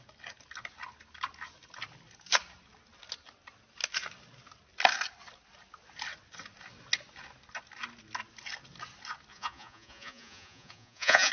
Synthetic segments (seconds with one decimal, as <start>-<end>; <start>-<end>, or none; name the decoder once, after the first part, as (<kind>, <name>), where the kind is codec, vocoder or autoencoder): 9.3-11.3 (vocoder, Vocos)